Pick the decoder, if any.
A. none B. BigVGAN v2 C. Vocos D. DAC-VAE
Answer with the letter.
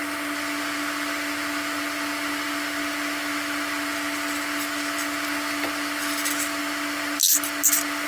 A